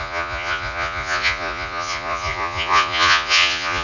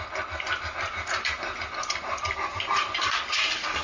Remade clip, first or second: first